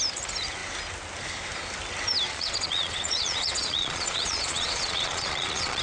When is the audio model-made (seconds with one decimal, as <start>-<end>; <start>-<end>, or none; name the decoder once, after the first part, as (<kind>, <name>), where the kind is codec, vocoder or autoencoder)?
2.3-5.8 (vocoder, Vocos)